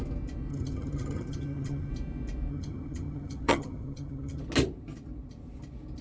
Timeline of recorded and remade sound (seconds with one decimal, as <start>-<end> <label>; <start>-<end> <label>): 0.0-0.5 recorded; 0.5-1.9 remade; 1.9-2.5 recorded; 2.5-4.4 remade; 4.4-6.0 recorded